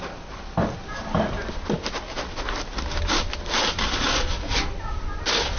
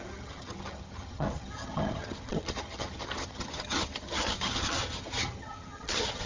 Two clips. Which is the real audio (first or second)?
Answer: first